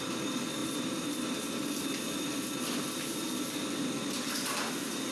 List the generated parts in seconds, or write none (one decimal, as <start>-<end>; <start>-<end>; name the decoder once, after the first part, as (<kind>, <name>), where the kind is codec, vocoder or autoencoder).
none